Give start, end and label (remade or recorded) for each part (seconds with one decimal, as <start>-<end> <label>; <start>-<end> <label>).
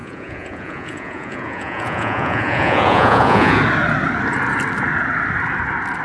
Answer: 0.0-3.6 remade; 3.6-6.0 recorded